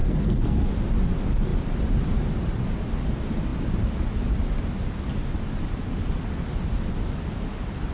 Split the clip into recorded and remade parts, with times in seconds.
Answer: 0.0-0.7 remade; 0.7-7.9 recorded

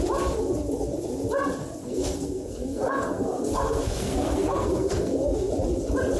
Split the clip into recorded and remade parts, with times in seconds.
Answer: 0.0-1.8 recorded; 1.8-5.5 remade; 5.5-6.2 recorded

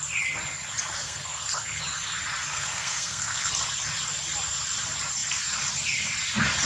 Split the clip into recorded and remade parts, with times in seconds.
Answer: 0.0-1.0 recorded; 1.0-1.8 remade; 1.8-2.5 recorded; 2.5-3.5 remade; 3.5-6.7 recorded

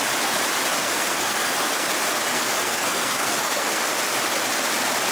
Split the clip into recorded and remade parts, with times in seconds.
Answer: 0.0-0.8 recorded; 0.8-1.9 remade; 1.9-2.3 recorded; 2.3-3.9 remade; 3.9-5.1 recorded

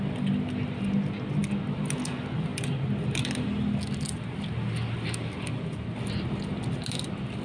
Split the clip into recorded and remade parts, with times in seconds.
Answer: 0.0-7.4 recorded

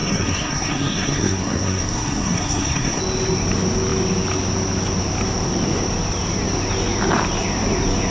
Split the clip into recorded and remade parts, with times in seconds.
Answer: 0.0-3.0 remade; 3.0-8.1 recorded

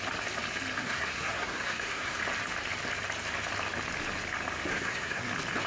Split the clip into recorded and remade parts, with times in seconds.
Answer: 0.0-0.8 recorded; 0.8-2.2 remade; 2.2-4.7 recorded; 4.7-5.2 remade; 5.2-5.7 recorded